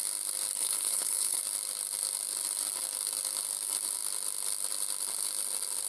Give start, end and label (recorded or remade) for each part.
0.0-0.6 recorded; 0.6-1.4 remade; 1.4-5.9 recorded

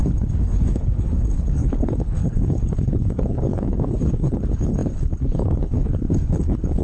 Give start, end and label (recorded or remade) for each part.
0.0-6.8 remade

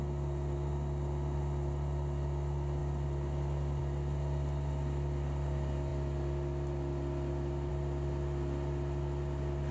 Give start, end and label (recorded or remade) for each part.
0.0-9.7 recorded